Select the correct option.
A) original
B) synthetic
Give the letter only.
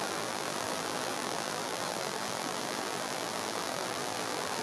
B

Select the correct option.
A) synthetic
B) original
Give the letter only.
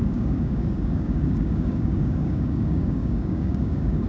A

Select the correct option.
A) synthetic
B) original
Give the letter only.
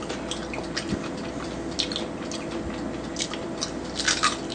B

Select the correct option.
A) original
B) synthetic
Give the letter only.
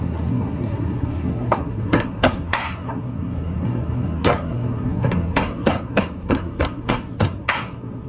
B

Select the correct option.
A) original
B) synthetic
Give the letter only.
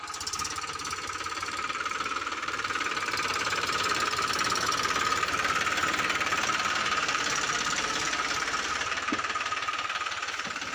B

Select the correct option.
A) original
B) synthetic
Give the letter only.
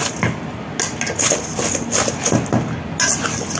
A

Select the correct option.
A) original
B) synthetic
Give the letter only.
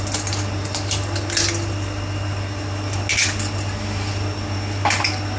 A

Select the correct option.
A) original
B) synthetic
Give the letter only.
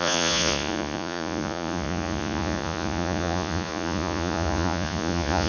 B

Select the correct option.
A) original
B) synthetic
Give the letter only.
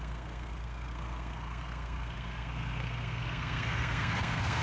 B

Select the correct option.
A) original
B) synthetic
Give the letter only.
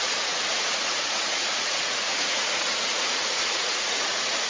B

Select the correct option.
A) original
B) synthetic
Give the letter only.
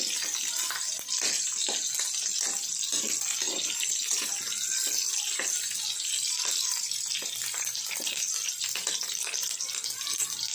A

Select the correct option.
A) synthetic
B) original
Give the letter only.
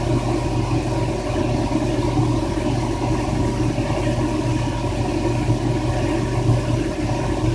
B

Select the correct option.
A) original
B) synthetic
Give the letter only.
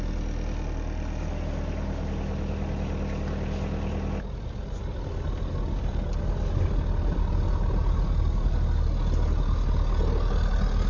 A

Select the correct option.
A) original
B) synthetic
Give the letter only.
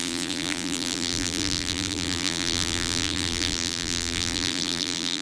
B